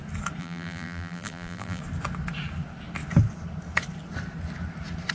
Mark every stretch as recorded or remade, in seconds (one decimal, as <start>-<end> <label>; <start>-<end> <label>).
0.0-0.4 recorded; 0.4-1.8 remade; 1.8-5.1 recorded